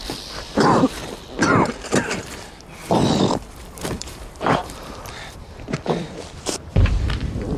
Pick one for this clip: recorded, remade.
remade